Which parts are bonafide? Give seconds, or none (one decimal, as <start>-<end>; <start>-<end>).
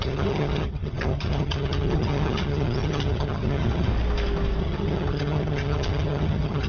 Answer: 3.9-4.6